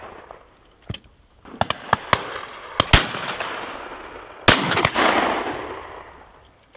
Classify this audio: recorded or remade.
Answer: recorded